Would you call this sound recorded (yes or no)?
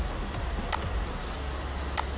yes